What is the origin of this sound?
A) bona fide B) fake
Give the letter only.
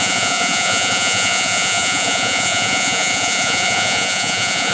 B